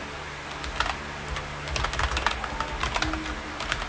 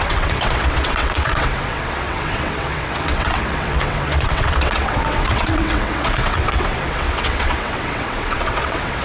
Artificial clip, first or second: second